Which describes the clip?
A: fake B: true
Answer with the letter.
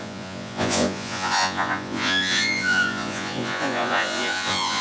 A